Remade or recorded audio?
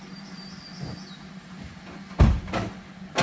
recorded